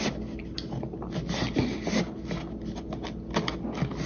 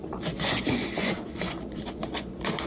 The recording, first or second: first